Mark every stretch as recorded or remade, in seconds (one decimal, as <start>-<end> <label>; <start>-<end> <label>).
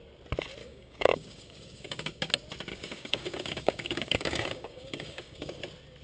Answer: 0.0-0.6 recorded; 0.6-2.3 remade; 2.3-2.7 recorded; 2.7-5.6 remade; 5.6-6.0 recorded